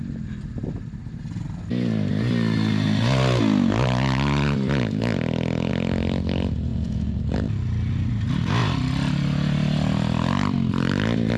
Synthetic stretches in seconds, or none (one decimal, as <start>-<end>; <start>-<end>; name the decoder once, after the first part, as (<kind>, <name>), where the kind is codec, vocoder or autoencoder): 6.7-7.2 (vocoder, Vocos)